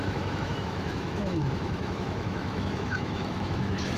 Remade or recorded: remade